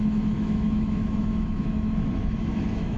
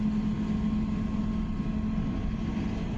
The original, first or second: second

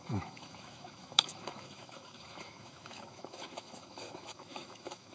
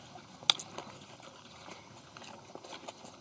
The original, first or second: second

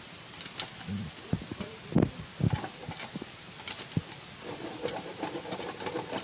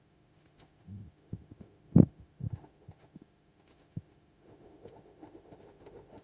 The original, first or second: first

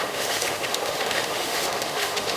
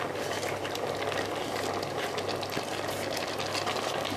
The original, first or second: second